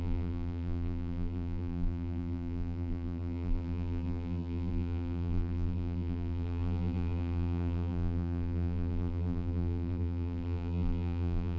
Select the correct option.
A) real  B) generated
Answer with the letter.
B